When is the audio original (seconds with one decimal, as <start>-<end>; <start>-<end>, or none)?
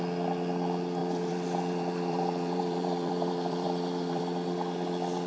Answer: 0.0-1.0; 4.2-5.3